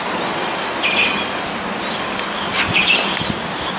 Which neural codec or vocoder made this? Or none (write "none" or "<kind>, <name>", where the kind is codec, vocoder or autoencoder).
none